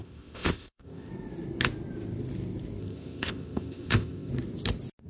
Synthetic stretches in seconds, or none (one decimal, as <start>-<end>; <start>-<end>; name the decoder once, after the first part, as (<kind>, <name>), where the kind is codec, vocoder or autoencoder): 0.0-1.1 (codec, ZipCodec); 2.8-4.3